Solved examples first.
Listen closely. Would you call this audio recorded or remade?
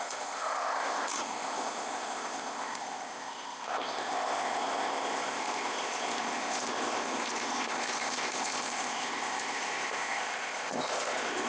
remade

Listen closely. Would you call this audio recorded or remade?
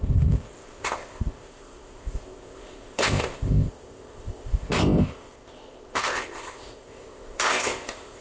remade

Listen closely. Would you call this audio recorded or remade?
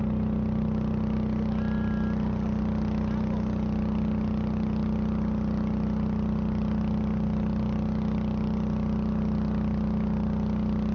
recorded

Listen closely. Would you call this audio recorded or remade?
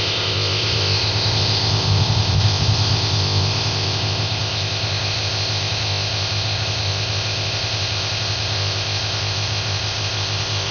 remade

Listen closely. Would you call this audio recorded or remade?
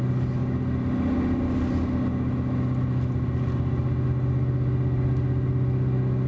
recorded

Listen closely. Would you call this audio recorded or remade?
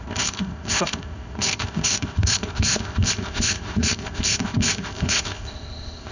remade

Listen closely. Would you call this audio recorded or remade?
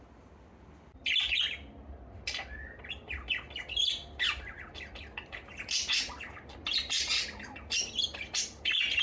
recorded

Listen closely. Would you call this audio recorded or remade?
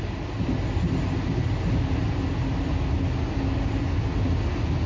recorded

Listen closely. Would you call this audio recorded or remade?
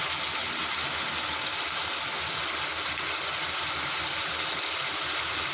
recorded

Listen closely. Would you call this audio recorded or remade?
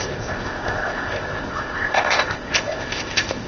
remade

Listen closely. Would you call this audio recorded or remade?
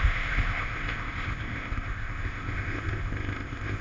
remade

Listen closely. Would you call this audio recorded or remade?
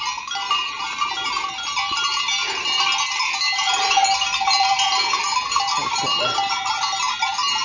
recorded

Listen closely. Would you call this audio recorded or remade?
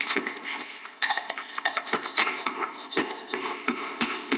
remade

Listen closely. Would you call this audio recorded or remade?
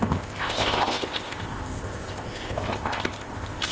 remade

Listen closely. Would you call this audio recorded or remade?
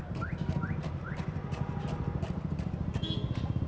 recorded